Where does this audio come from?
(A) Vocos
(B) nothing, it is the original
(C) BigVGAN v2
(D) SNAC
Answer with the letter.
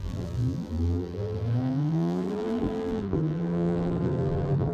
C